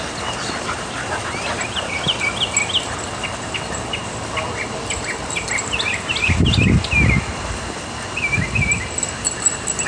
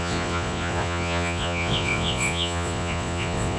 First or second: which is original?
first